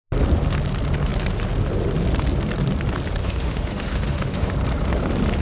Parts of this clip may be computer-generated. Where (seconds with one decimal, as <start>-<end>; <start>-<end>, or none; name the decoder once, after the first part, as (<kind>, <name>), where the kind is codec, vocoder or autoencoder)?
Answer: 3.2-4.5 (autoencoder, DAC-VAE)